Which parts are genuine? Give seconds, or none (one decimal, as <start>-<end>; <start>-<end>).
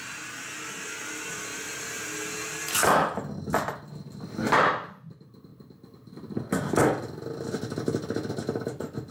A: 0.0-9.1